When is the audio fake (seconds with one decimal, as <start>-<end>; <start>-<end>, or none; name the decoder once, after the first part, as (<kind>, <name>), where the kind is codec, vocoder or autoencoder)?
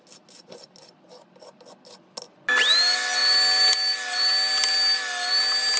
none